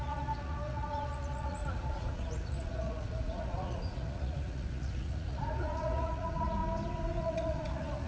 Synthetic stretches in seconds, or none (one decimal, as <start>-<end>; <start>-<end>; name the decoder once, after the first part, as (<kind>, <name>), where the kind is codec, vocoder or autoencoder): 0.0-6.6 (vocoder, Vocos); 7.2-8.1